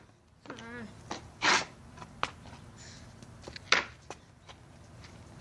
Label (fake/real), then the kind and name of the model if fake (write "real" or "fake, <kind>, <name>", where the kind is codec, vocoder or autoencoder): real